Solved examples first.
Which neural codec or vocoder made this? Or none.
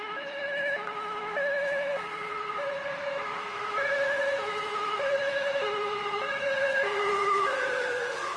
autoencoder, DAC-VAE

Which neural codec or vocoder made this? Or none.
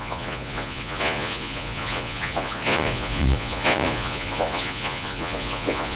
vocoder, Vocos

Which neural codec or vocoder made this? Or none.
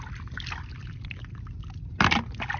none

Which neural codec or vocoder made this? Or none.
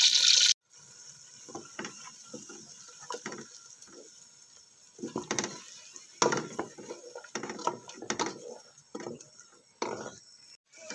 none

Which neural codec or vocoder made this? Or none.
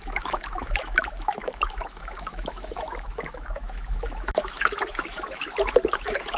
autoencoder, DAC-VAE